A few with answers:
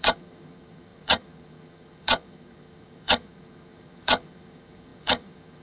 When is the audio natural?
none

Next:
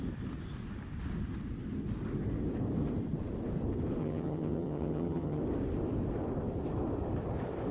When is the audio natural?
0.0-4.0; 5.4-7.7

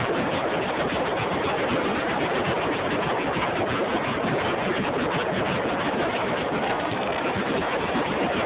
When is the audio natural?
0.0-6.6; 7.2-8.5

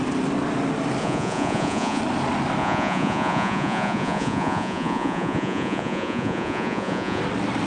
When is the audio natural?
0.0-1.0; 2.0-2.6; 7.2-7.7

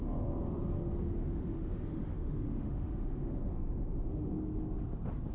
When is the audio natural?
0.0-1.2; 4.3-5.3